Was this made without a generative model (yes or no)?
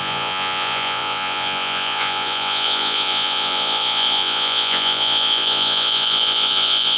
no